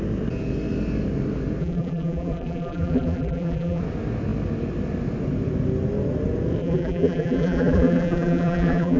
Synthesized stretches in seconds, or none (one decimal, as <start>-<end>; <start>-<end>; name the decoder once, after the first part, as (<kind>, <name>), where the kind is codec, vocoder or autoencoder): 1.6-3.8 (vocoder, BigVGAN v2); 6.6-9.0